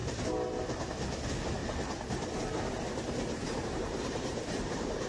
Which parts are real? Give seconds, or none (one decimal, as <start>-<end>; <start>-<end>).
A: 0.0-1.6